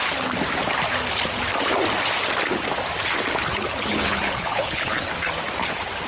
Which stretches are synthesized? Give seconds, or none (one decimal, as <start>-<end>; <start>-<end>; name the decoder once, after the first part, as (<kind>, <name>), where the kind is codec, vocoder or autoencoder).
3.5-5.1 (codec, HILCodec)